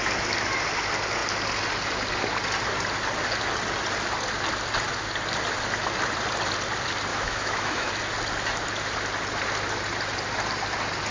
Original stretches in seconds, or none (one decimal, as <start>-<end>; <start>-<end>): 0.0-7.1; 7.9-11.1